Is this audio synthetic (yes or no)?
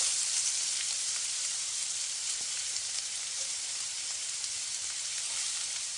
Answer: yes